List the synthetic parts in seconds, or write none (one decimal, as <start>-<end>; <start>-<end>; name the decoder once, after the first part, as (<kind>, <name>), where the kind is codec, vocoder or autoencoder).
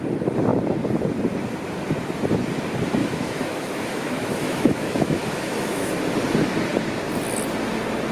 3.0-5.9 (autoencoder, DAC-VAE)